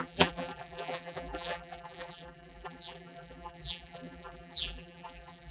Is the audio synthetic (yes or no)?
yes